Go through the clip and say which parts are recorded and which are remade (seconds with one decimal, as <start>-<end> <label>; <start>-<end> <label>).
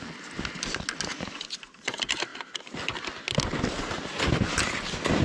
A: 0.0-5.2 recorded